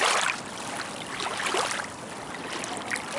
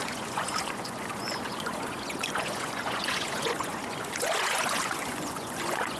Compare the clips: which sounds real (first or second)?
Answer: first